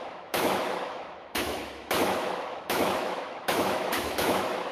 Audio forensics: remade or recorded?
remade